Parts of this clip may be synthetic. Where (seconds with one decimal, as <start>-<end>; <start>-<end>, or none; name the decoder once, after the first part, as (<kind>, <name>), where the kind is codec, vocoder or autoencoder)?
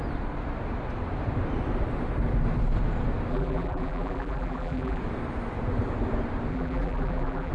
3.3-5.0 (vocoder, BigVGAN v2); 6.5-7.5